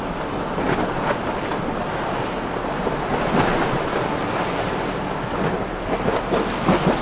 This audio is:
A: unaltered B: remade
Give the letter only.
A